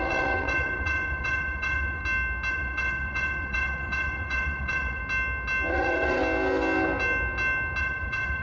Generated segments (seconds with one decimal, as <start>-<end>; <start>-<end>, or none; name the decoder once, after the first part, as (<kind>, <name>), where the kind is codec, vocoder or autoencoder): 0.0-2.0 (vocoder, WaveNeXt); 2.5-5.0; 5.7-6.2; 7.8-8.4